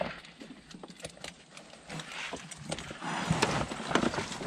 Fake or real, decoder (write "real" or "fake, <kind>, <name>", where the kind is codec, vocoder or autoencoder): real